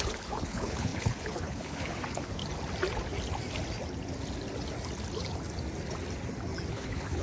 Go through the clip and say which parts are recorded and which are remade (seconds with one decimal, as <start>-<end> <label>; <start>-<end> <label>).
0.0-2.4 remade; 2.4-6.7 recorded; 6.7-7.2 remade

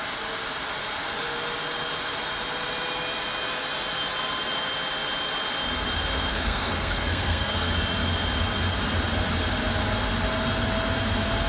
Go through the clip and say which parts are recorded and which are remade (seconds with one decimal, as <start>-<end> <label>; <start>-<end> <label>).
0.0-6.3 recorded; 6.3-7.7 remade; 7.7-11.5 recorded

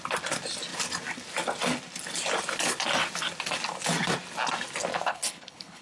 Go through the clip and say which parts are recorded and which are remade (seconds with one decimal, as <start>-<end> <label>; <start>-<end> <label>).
0.0-4.9 recorded; 4.9-5.8 remade